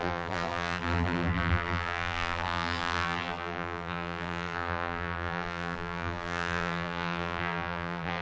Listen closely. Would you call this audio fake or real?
fake